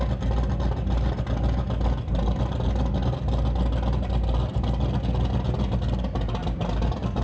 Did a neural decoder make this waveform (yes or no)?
no